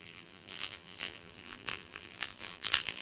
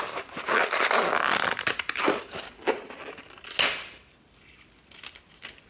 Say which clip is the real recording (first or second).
second